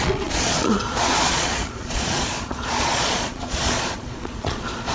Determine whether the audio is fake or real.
fake